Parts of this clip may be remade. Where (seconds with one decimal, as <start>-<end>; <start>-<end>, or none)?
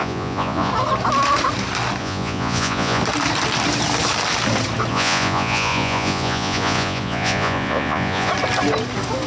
0.0-0.7; 2.0-3.0; 4.9-8.3